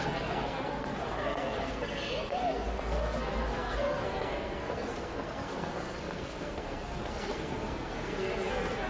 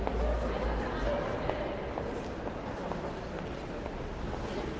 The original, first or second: second